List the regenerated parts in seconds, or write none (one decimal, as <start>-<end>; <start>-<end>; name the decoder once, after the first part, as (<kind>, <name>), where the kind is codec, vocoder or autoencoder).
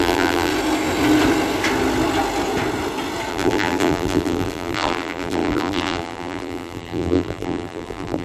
0.0-0.5 (vocoder, BigVGAN v2); 3.3-8.2